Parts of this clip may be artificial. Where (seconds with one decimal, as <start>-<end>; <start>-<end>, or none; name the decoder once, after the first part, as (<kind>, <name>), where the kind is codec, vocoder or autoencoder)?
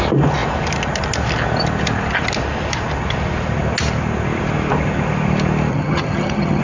5.7-6.6 (vocoder, HiFi-GAN)